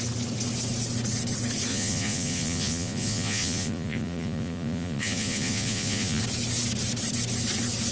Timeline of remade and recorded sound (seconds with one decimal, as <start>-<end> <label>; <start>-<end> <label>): 0.0-1.7 recorded; 1.7-6.2 remade; 6.2-7.9 recorded